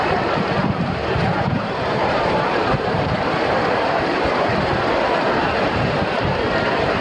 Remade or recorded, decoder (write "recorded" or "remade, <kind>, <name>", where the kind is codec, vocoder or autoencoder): remade, vocoder, BigVGAN v2